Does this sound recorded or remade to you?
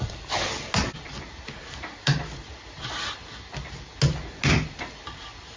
recorded